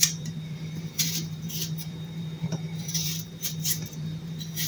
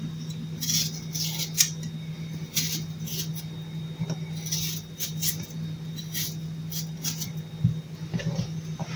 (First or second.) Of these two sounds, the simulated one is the first